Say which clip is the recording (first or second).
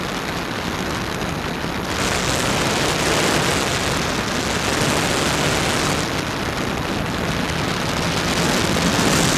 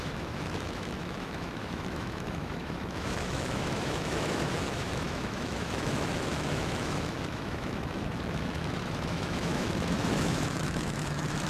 first